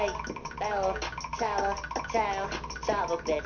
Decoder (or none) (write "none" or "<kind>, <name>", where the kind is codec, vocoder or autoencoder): none